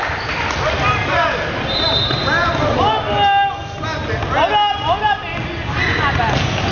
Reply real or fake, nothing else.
real